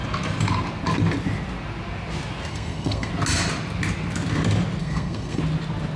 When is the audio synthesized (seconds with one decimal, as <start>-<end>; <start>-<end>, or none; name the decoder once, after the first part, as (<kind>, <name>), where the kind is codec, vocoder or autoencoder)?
2.5-3.1 (codec, SNAC); 4.8-5.4